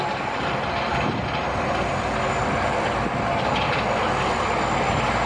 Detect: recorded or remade recorded